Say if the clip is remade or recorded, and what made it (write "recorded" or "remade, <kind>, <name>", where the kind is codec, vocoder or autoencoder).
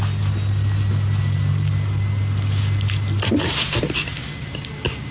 recorded